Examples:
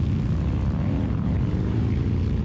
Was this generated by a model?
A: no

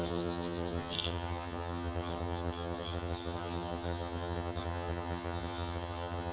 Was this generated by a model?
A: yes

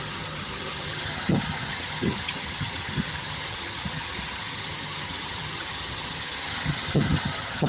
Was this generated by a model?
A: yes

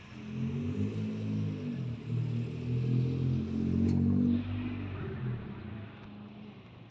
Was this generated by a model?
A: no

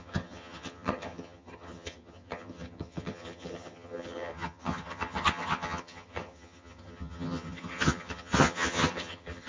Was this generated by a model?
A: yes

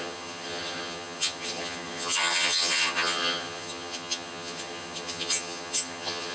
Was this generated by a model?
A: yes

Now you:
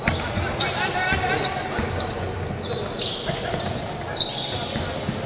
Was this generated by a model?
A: no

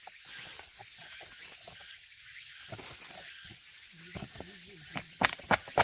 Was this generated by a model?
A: no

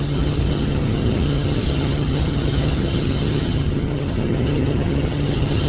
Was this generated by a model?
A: yes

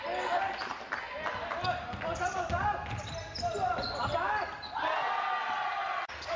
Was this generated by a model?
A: no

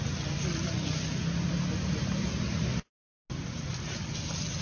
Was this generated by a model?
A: no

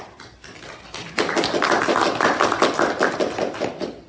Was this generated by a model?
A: no